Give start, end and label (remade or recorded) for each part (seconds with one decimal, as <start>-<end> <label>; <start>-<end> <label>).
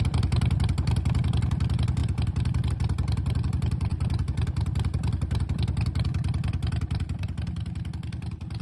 0.0-8.6 recorded